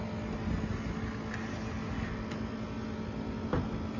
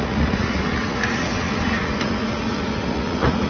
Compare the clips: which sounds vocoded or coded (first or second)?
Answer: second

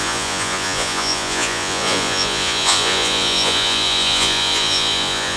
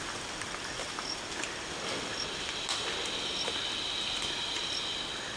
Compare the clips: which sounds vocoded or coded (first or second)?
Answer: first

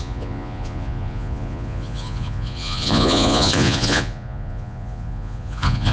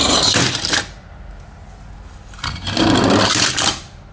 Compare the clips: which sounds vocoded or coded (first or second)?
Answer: first